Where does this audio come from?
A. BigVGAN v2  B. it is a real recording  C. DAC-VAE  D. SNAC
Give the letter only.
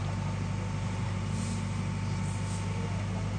B